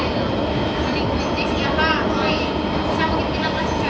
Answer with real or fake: real